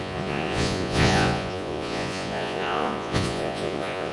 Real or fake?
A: fake